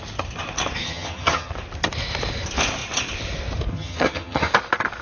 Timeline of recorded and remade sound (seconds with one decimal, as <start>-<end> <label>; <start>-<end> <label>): 0.0-0.8 recorded; 0.8-1.5 remade; 1.5-3.7 recorded; 3.7-4.5 remade; 4.5-5.0 recorded